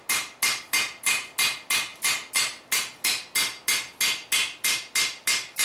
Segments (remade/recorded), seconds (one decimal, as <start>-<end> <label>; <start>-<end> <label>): 0.0-5.6 recorded

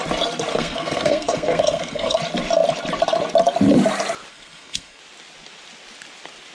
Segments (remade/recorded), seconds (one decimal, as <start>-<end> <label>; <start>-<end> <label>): 0.0-0.5 recorded; 0.5-2.2 remade; 2.2-4.3 recorded; 4.3-5.0 remade; 5.0-6.5 recorded

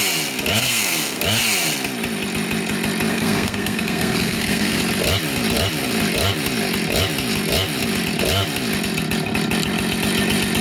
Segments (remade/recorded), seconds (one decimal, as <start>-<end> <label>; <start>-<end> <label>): 0.0-0.6 recorded; 0.6-1.2 remade; 1.2-3.1 recorded; 3.1-4.8 remade; 4.8-10.6 recorded

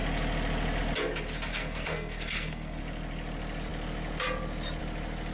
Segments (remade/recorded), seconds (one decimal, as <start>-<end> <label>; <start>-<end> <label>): 0.0-1.5 recorded; 1.5-2.8 remade; 2.8-5.3 recorded

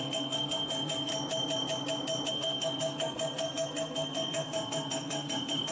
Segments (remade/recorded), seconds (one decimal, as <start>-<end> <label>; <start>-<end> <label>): 0.0-1.1 remade; 1.1-2.3 recorded; 2.3-5.7 remade